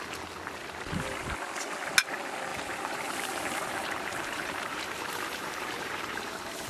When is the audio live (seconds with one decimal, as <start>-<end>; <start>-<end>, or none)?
0.0-2.5